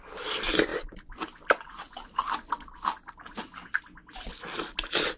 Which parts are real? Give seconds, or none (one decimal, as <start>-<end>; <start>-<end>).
0.0-5.2